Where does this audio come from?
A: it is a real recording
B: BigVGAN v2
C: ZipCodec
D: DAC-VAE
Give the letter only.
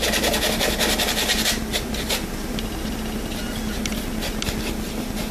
A